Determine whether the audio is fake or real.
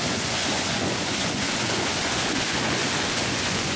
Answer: fake